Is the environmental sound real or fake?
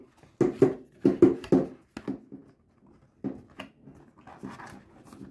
real